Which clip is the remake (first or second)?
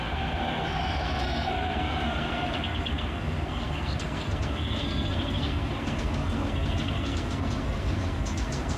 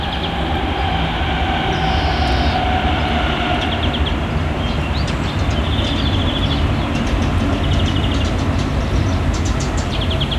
first